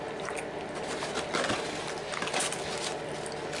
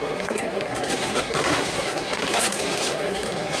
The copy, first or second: second